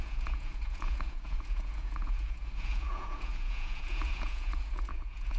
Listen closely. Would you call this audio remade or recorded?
remade